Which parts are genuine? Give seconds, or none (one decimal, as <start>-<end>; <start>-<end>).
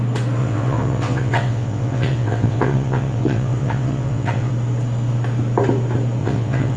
0.0-0.4; 4.5-6.2